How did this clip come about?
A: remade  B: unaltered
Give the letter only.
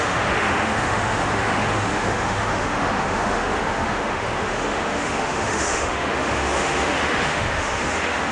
A